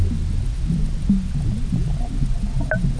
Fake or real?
real